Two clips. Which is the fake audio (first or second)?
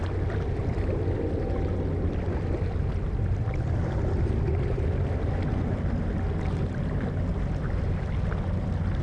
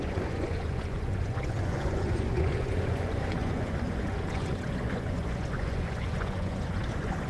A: second